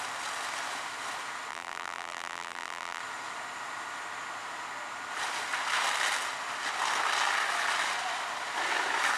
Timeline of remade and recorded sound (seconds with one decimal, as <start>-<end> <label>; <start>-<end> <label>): 0.0-1.5 recorded; 1.5-3.0 remade; 3.0-9.2 recorded